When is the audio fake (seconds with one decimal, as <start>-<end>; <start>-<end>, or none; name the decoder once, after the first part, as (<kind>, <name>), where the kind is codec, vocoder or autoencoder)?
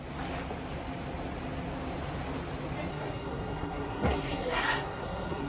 2.9-5.5 (codec, SNAC)